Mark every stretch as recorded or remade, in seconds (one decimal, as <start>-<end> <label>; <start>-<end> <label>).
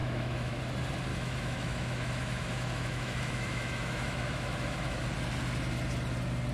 0.0-0.6 remade; 0.6-1.1 recorded; 1.1-5.0 remade; 5.0-6.5 recorded